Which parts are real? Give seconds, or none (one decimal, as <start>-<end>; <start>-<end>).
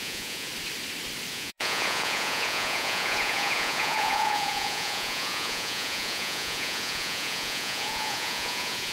0.5-1.3